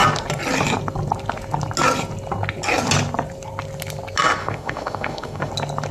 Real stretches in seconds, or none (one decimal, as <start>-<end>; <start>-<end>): 0.0-4.4; 5.5-5.9

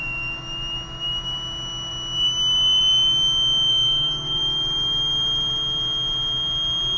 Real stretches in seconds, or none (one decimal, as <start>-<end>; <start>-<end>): 0.0-3.7; 4.4-7.0

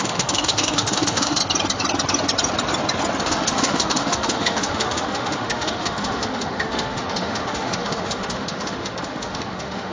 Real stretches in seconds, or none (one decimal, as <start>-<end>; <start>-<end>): 1.4-3.2

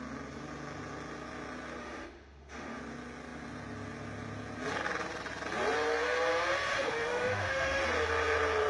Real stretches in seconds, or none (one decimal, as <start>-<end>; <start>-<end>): 0.0-1.8; 2.8-6.7; 7.8-8.7

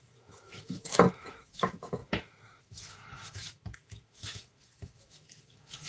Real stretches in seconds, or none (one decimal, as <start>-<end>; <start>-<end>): none

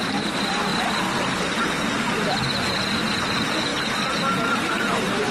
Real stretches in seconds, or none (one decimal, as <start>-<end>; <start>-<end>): 0.0-5.3